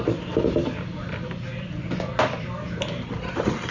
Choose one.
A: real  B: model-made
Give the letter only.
B